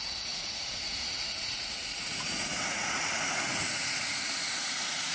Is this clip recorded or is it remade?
remade